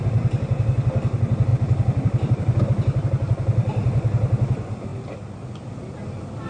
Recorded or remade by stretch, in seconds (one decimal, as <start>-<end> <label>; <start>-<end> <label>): 0.0-1.5 recorded; 1.5-2.6 remade; 2.6-4.9 recorded; 4.9-5.4 remade; 5.4-6.5 recorded